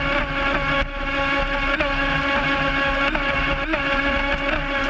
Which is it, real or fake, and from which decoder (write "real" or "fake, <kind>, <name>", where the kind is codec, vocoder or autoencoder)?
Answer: real